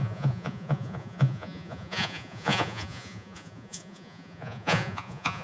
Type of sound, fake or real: fake